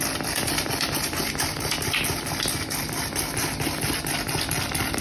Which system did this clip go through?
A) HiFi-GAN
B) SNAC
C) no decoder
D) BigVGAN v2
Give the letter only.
C